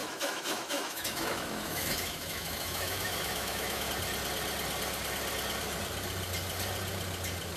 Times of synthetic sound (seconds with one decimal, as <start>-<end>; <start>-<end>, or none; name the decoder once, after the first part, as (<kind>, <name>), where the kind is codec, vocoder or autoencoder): 0.0-3.9 (autoencoder, DAC-VAE)

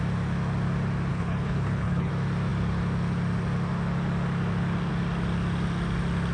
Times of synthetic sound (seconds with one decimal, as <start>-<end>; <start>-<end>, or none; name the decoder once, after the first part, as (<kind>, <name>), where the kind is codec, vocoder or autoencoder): 1.1-2.1 (codec, HILCodec)

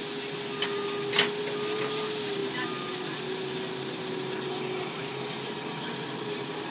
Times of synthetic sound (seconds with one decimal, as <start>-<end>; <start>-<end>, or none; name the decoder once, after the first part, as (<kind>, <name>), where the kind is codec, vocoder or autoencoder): none

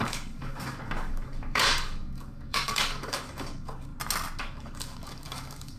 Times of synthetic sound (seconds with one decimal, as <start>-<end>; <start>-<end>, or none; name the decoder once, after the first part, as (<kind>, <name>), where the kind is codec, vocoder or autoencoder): 0.0-3.9 (codec, DAC); 4.4-5.8

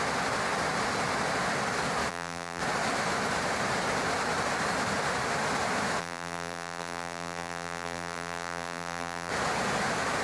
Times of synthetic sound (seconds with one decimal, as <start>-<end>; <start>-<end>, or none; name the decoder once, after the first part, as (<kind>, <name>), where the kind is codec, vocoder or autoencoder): 2.1-2.6 (vocoder, BigVGAN v2); 6.0-9.3

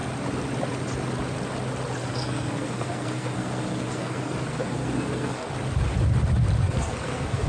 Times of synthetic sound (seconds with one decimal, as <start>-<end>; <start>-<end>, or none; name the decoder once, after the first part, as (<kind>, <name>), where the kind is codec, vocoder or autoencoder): 2.0-5.5 (codec, SNAC); 6.6-7.5

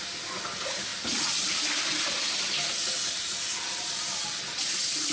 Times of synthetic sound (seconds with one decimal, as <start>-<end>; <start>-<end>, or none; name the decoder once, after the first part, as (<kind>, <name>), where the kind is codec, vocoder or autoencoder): none